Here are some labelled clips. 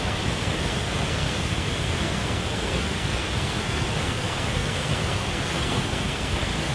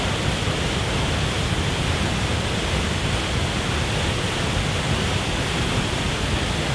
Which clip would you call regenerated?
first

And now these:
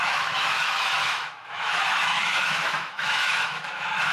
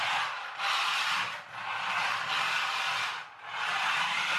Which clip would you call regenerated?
first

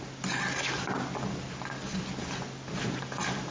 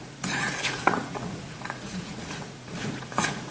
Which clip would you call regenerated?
second